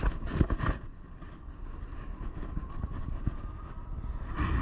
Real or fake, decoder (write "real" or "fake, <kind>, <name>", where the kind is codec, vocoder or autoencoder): real